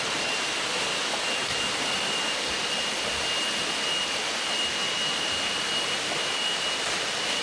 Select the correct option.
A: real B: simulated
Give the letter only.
A